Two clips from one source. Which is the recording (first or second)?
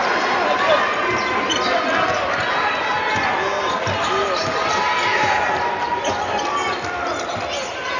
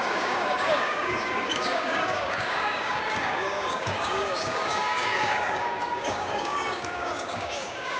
first